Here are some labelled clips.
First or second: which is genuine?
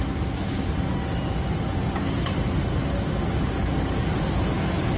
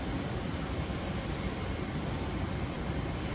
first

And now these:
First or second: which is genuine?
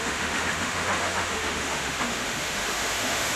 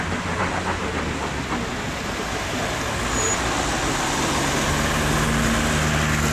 second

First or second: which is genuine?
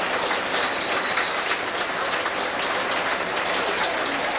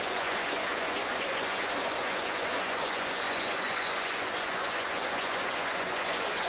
first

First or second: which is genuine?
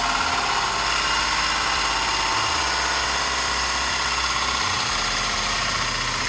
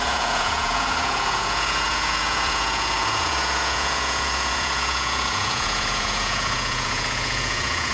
first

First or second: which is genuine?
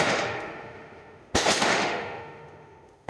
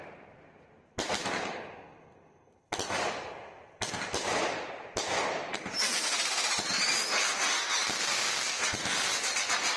second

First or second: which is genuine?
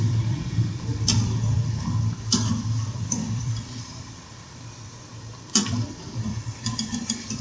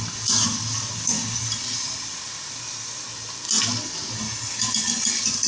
second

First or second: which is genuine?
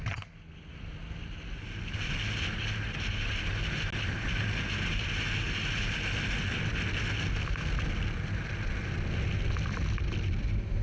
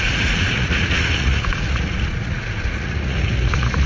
first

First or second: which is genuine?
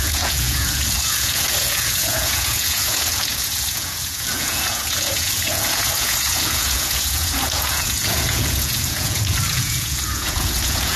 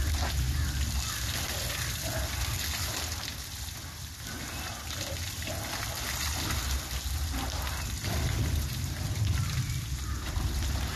second